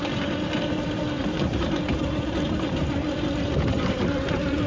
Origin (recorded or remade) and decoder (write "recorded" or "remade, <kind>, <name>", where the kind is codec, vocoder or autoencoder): remade, vocoder, BigVGAN v2